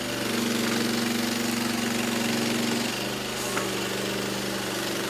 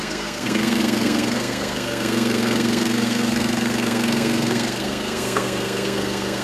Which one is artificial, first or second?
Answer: second